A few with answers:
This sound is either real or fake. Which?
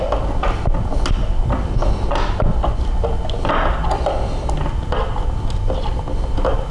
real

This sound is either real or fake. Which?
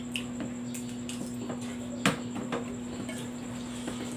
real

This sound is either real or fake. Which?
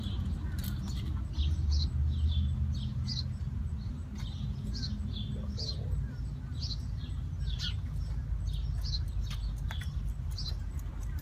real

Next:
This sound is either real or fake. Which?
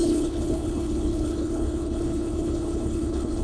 fake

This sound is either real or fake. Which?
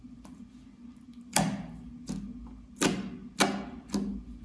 real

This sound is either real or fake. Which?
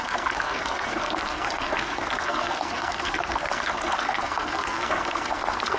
fake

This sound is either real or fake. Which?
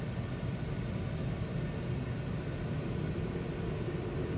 real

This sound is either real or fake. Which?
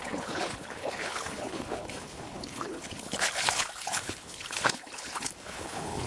fake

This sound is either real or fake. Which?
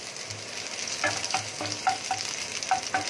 real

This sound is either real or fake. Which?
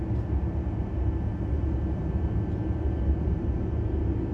real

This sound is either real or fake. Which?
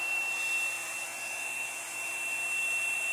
real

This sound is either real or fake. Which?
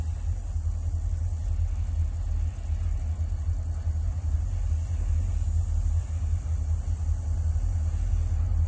real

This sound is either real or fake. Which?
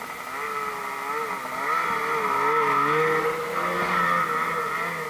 real